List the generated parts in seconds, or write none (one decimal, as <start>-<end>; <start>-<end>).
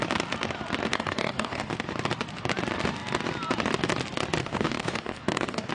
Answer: 0.9-1.7; 4.4-5.7